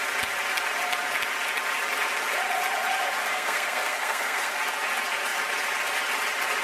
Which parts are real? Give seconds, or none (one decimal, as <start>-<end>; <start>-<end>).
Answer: 0.0-3.2; 4.6-6.6